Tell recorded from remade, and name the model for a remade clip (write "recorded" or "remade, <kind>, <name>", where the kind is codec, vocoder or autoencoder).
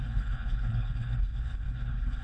remade, codec, HILCodec